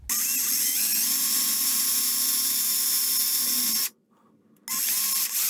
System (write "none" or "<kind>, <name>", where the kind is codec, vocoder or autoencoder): none